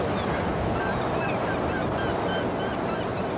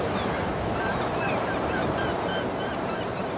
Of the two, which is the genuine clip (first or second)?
first